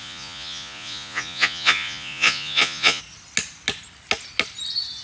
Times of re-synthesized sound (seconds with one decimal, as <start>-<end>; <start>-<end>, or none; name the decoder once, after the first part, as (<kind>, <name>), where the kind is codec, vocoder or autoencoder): 0.0-3.0 (vocoder, Vocos)